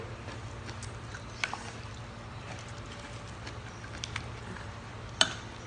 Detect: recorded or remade recorded